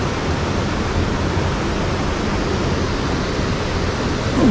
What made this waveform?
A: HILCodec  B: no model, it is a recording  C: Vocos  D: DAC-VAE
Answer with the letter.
B